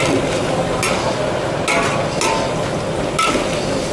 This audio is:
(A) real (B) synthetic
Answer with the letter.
A